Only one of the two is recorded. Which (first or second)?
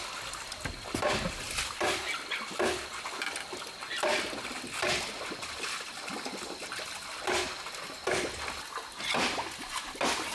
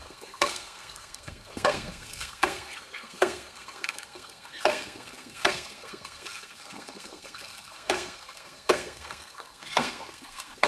first